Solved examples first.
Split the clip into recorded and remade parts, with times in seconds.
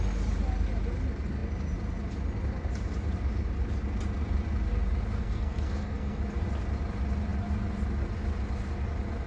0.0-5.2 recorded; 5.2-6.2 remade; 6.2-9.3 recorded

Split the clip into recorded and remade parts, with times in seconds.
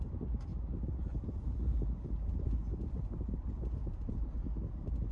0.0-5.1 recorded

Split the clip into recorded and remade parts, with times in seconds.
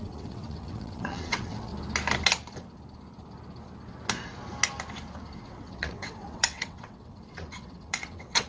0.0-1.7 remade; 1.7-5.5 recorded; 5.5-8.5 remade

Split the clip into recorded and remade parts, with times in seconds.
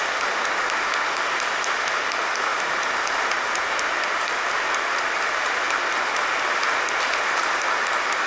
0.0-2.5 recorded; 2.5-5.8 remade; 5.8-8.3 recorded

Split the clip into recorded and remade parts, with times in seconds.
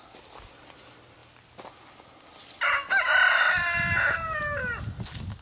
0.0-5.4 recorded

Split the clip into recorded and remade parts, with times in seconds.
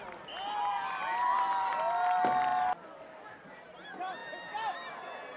0.0-1.3 recorded; 1.3-1.8 remade; 1.8-5.4 recorded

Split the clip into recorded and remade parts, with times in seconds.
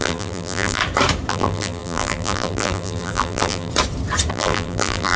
0.0-0.8 remade; 0.8-1.3 recorded; 1.3-3.7 remade; 3.7-4.3 recorded; 4.3-5.2 remade